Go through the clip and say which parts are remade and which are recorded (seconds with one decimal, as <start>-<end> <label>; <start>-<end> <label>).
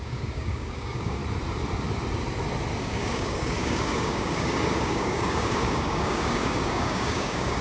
0.0-1.2 remade; 1.2-2.8 recorded; 2.8-7.6 remade